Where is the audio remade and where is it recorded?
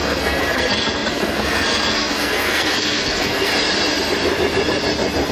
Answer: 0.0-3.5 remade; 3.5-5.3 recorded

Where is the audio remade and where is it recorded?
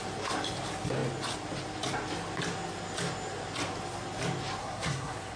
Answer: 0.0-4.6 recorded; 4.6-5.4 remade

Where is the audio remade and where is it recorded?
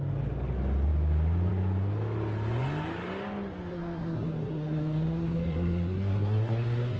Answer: 0.0-3.7 recorded; 3.7-7.0 remade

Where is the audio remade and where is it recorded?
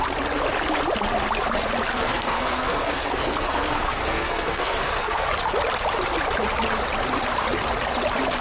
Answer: 0.0-1.9 recorded; 1.9-5.3 remade; 5.3-8.4 recorded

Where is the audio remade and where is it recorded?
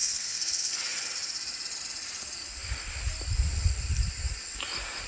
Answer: 0.0-0.7 remade; 0.7-5.1 recorded